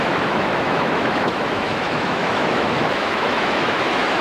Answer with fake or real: fake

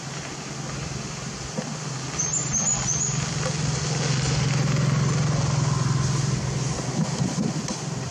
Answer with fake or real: real